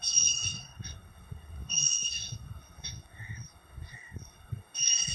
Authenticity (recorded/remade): remade